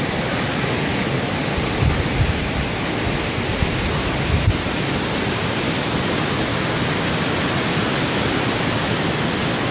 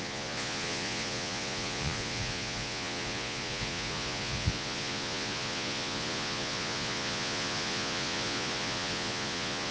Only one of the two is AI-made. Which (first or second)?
second